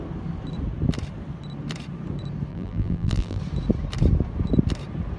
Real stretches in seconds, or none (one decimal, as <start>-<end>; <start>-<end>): 0.0-2.5; 3.4-5.2